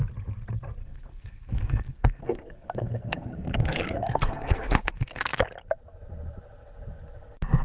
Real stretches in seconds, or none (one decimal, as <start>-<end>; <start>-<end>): 0.0-0.8; 5.4-7.6